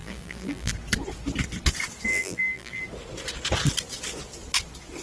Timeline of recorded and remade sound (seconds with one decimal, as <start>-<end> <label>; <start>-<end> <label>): 0.0-0.7 remade; 0.7-2.1 recorded; 2.1-2.8 remade; 2.8-5.0 recorded

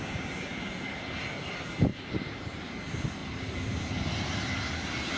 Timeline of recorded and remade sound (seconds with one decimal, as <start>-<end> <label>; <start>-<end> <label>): 0.0-1.9 recorded; 1.9-2.8 remade; 2.8-5.2 recorded

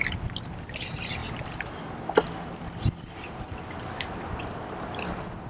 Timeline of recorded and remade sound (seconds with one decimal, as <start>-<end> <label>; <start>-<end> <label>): 0.0-5.5 recorded

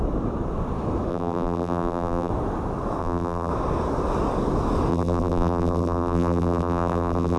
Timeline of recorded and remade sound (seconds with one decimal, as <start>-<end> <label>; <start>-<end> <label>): 0.0-1.1 recorded; 1.1-2.3 remade; 2.3-3.0 recorded; 3.0-3.5 remade; 3.5-4.9 recorded; 4.9-7.4 remade